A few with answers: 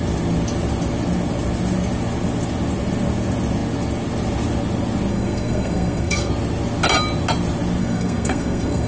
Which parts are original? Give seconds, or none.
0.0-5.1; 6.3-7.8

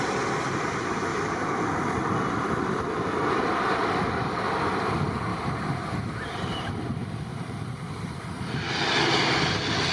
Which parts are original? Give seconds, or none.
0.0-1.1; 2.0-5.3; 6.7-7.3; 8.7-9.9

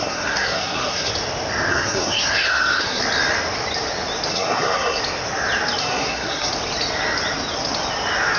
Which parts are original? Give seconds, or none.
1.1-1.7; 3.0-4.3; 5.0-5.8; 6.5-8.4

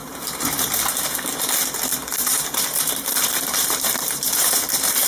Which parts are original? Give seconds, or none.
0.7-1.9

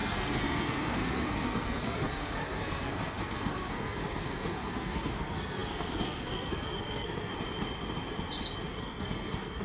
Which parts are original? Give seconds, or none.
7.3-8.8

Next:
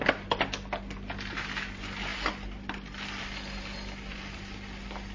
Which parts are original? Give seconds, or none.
0.0-5.1

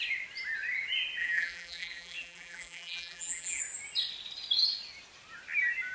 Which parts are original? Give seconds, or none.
0.0-1.2; 3.6-5.9

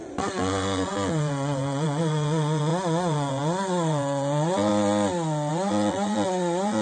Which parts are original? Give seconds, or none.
4.7-5.5